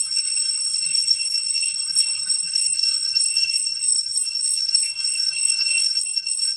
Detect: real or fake fake